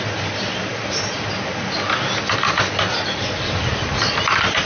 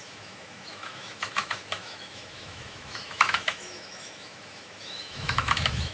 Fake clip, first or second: second